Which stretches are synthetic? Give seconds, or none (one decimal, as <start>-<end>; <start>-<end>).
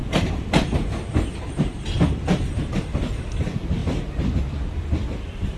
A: none